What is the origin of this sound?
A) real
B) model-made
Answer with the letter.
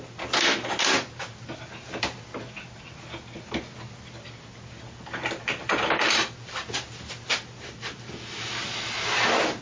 A